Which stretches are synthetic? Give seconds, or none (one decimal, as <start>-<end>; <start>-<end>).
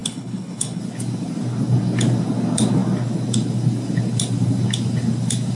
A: 0.0-0.8